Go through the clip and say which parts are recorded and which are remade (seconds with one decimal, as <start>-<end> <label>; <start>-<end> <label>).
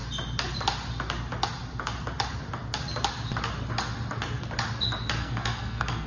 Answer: 0.0-5.2 recorded; 5.2-6.1 remade